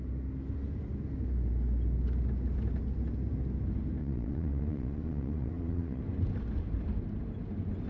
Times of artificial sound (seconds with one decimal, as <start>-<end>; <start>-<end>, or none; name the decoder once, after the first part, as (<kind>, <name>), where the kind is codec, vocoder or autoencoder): 4.0-6.0 (vocoder, Vocos)